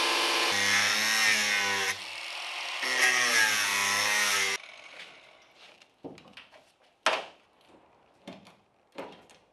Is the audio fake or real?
real